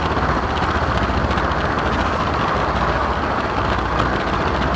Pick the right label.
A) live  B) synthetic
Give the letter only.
A